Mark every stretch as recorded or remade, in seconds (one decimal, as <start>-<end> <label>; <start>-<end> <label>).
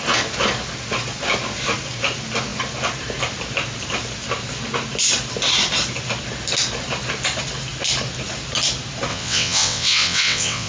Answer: 0.0-9.1 recorded; 9.1-10.7 remade